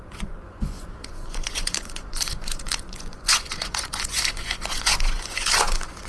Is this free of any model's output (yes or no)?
no